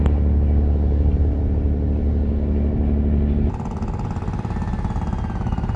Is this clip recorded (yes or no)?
yes